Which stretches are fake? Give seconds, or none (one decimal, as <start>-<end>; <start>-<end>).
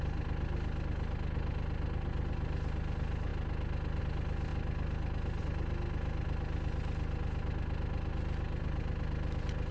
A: none